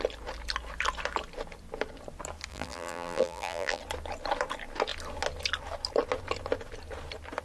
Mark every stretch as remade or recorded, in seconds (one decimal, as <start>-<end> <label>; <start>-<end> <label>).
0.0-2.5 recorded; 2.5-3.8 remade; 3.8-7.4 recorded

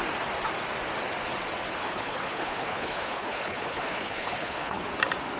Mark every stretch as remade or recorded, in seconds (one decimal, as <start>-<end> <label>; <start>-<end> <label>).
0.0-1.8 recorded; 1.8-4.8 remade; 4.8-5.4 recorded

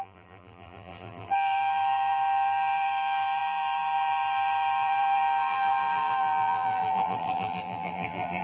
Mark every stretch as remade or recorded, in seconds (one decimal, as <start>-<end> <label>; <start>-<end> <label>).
0.0-8.4 remade

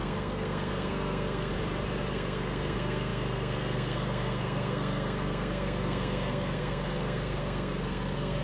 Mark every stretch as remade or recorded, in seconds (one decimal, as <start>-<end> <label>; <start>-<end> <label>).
0.0-1.5 remade; 1.5-2.1 recorded; 2.1-8.4 remade